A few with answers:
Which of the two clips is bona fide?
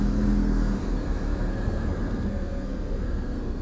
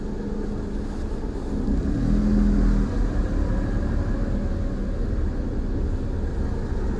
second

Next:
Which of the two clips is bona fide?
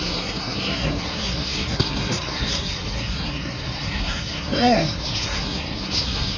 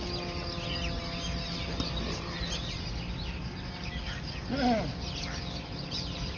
second